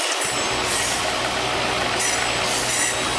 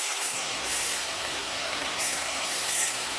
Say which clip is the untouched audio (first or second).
first